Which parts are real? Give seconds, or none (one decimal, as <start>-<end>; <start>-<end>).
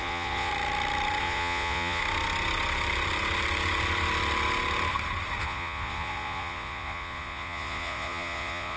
0.5-1.2; 2.0-5.4